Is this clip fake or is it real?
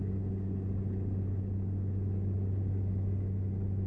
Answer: real